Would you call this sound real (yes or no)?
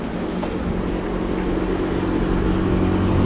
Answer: yes